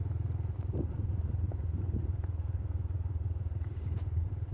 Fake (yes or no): no